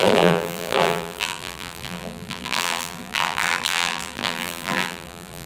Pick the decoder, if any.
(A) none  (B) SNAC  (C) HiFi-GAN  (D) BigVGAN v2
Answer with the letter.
D